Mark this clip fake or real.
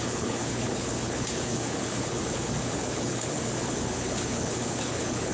fake